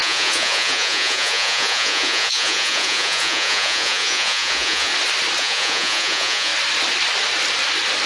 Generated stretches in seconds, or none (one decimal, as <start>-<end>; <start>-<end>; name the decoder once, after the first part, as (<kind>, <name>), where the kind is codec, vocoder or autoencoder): 0.0-4.9 (vocoder, Vocos); 5.4-6.5